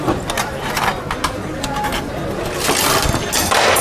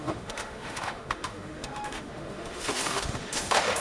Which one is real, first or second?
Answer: first